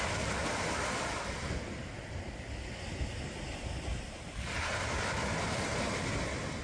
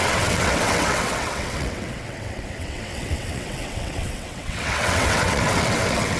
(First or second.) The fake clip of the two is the second